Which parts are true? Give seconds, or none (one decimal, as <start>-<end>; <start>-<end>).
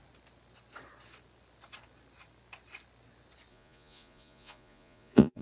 0.0-3.5